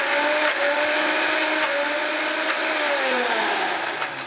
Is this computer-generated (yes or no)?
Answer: no